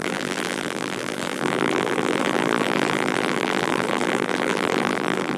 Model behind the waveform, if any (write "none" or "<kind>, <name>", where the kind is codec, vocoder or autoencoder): vocoder, BigVGAN v2